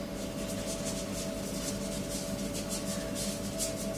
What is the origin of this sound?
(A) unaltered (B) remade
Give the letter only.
A